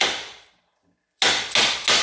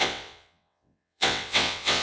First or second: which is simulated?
second